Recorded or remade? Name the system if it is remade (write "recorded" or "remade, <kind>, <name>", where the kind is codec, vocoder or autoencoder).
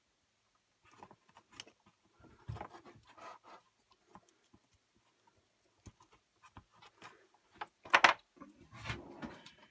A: recorded